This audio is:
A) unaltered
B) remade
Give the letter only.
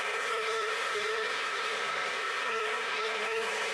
B